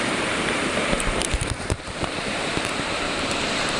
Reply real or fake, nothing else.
fake